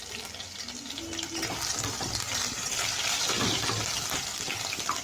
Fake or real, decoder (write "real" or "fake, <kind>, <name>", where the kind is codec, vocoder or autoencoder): real